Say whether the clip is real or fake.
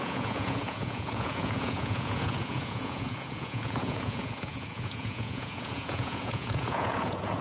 fake